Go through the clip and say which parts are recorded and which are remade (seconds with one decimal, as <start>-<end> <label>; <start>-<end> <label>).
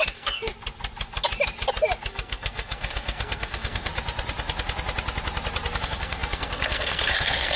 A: 0.0-0.5 remade; 0.5-2.1 recorded; 2.1-3.9 remade; 3.9-5.8 recorded; 5.8-7.6 remade